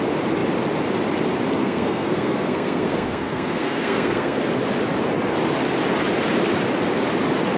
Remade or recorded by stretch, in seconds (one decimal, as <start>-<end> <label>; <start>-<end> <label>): 0.0-1.6 recorded; 1.6-4.4 remade; 4.4-7.6 recorded